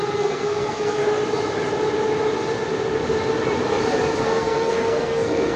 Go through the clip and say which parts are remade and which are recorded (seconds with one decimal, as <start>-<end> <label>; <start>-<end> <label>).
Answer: 0.0-1.0 remade; 1.0-4.2 recorded; 4.2-5.6 remade